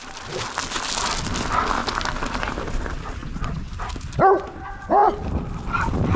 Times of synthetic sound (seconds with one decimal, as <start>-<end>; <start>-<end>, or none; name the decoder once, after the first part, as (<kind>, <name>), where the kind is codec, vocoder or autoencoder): 3.2-3.7 (vocoder, Vocos)